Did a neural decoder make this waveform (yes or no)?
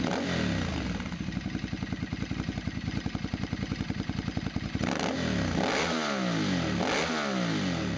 no